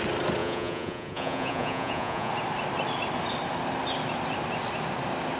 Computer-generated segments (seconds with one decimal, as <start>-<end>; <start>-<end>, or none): 0.4-2.3